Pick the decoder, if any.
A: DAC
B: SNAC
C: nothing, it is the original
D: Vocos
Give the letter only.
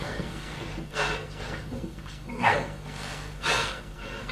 B